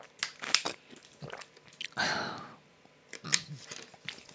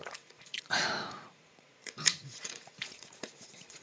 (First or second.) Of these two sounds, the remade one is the second